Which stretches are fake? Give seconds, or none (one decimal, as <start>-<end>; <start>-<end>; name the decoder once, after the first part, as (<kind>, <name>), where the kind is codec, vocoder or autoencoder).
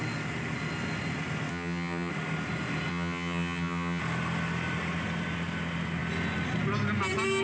1.5-2.1 (vocoder, HiFi-GAN); 2.9-4.0